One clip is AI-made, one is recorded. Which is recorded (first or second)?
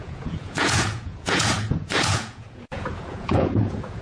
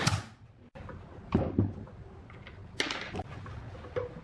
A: second